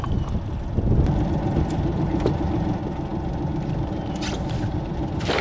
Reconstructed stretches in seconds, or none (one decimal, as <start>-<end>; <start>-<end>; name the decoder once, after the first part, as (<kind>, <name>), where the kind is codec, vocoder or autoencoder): none